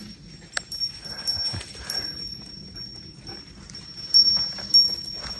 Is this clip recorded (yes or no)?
yes